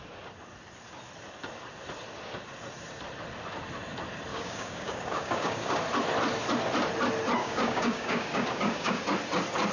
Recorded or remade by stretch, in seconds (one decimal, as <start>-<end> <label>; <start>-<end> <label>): 0.0-4.3 recorded; 4.3-5.8 remade; 5.8-7.4 recorded; 7.4-9.0 remade; 9.0-9.7 recorded